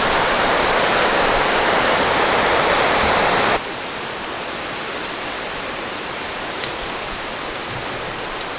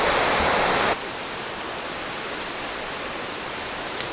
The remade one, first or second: first